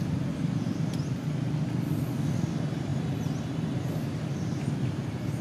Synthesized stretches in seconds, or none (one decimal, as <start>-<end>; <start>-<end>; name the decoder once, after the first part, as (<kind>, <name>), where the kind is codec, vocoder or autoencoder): none